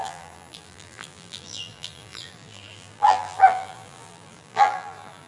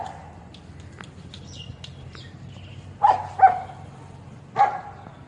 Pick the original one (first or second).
second